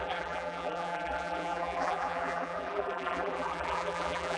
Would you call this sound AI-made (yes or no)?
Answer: yes